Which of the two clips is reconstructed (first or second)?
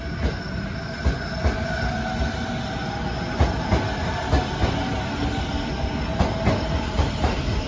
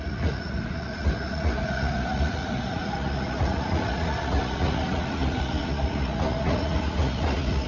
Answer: second